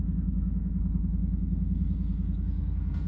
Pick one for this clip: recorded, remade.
remade